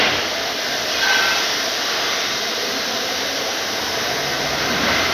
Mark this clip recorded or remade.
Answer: recorded